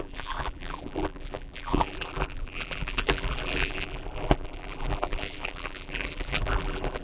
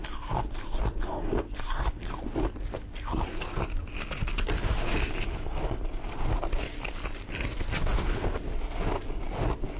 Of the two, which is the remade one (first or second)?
first